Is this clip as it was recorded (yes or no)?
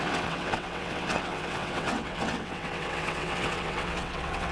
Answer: no